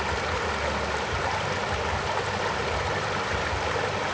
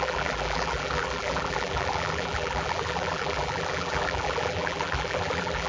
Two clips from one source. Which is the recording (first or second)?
first